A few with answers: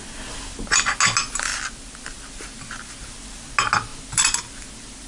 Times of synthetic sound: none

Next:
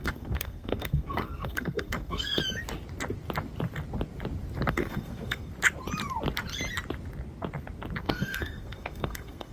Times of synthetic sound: 0.0-2.4 (codec, SNAC); 4.7-5.5; 8.0-9.5

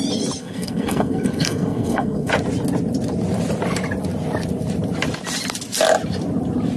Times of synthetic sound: 0.4-2.3 (codec, SNAC)

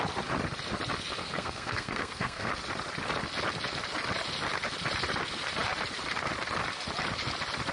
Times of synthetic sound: 1.2-2.5 (codec, SNAC)

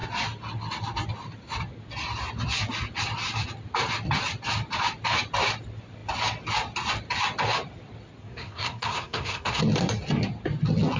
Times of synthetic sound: 8.2-9.6 (codec, SNAC)

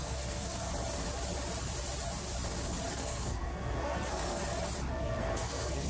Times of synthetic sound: 0.0-0.7 (codec, SNAC); 2.9-4.4; 4.9-5.9

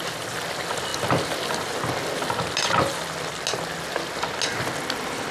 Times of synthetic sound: none

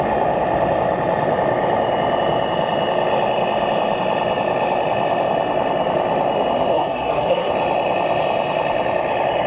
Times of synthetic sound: 6.7-7.5 (codec, SNAC)